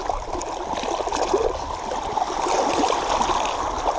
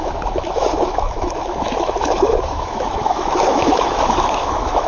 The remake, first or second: second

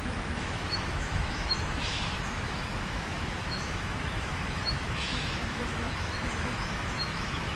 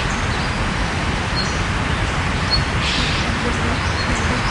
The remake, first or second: first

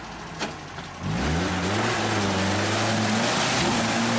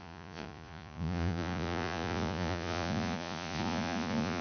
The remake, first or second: second